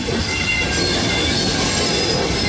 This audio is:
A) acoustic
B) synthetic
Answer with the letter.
A